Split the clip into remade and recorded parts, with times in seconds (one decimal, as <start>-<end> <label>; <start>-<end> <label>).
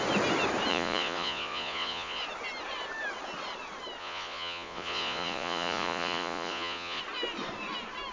0.0-0.7 recorded; 0.7-2.2 remade; 2.2-4.0 recorded; 4.0-7.0 remade; 7.0-8.1 recorded